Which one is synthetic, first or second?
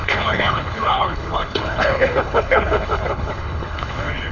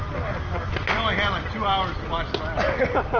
first